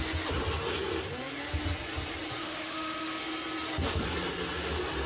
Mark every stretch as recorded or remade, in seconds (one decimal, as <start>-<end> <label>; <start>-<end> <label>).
0.0-2.4 recorded; 2.4-3.2 remade; 3.2-5.1 recorded

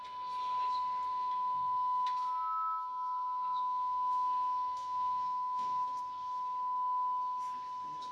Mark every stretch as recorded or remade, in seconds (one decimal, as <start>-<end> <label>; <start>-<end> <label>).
0.0-1.1 recorded; 1.1-6.0 remade; 6.0-8.1 recorded